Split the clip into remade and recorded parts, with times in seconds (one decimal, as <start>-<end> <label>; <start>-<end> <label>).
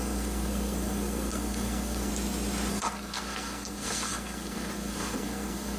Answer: 0.0-2.1 remade; 2.1-2.7 recorded; 2.7-5.8 remade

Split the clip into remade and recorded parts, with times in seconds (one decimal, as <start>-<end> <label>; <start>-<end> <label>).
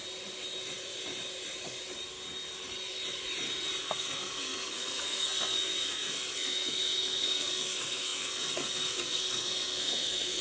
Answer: 0.0-3.8 recorded; 3.8-10.4 remade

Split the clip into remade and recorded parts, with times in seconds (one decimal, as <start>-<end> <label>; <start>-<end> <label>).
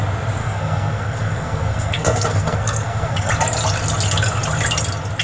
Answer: 0.0-0.4 recorded; 0.4-3.3 remade; 3.3-5.2 recorded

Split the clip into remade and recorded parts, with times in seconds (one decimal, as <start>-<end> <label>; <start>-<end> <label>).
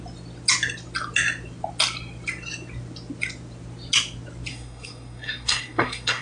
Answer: 0.0-4.5 recorded; 4.5-6.2 remade